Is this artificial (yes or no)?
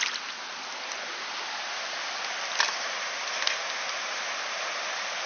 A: no